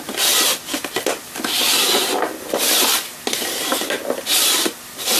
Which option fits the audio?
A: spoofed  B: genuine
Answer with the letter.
B